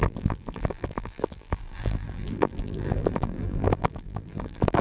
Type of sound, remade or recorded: remade